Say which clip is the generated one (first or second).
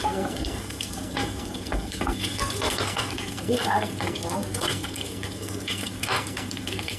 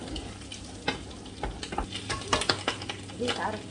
first